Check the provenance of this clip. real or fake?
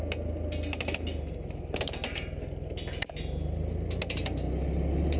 real